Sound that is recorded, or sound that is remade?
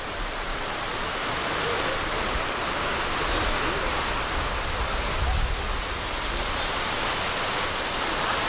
recorded